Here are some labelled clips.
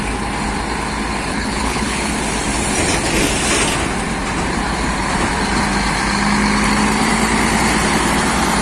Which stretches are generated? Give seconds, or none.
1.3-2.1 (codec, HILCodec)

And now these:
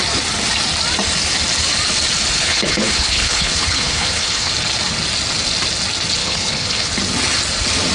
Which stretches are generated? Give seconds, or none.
2.4-4.5 (codec, HILCodec); 6.2-6.9

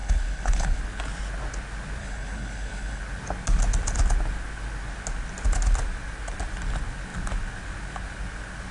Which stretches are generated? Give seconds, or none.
0.0-0.8 (codec, HILCodec); 2.0-3.0

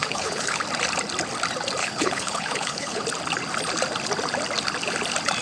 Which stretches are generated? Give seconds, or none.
0.0-0.6 (codec, HILCodec); 1.8-3.0

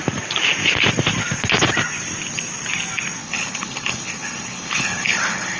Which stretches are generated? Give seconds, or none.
3.2-5.6 (codec, HILCodec)

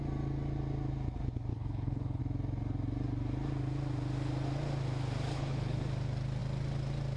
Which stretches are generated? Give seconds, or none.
1.5-2.2 (codec, HILCodec); 5.3-5.8

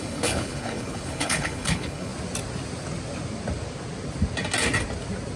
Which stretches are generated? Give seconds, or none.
0.0-2.1 (codec, HILCodec)